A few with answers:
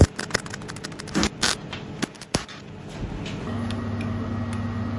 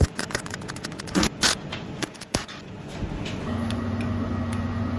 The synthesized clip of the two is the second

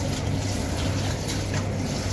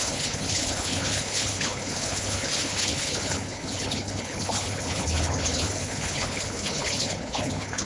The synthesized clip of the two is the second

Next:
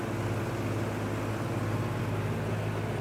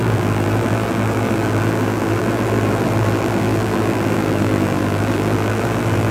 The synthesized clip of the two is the second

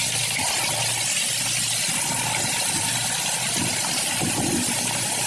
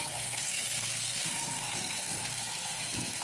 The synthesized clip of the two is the second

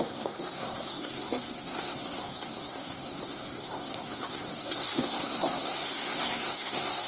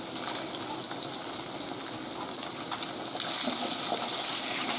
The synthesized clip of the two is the first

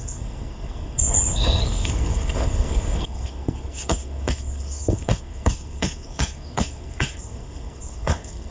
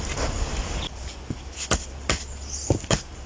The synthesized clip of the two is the first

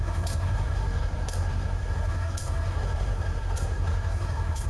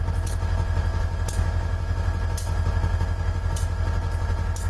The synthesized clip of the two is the first